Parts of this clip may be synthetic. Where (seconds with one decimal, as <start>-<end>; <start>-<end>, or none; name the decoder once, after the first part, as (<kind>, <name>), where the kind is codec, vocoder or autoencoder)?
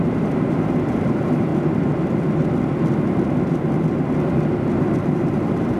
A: 0.0-1.5 (vocoder, BigVGAN v2); 5.0-5.8